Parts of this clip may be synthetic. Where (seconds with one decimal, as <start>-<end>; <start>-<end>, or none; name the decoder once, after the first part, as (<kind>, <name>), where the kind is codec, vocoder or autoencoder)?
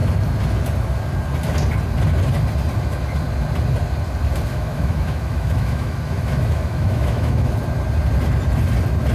4.5-7.5 (autoencoder, DAC-VAE)